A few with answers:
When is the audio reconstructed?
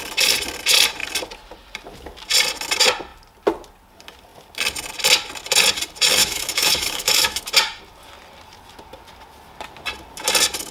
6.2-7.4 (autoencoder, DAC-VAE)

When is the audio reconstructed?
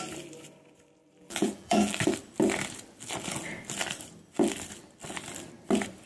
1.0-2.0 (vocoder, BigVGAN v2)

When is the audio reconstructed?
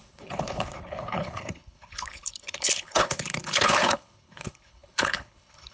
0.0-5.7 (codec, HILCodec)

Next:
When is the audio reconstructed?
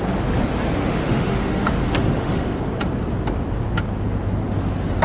0.8-2.6 (autoencoder, DAC-VAE)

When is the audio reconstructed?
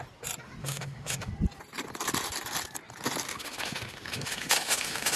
0.6-1.3 (autoencoder, DAC-VAE); 3.3-5.2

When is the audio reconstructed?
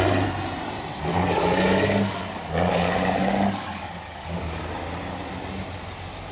1.1-4.6 (codec, DAC)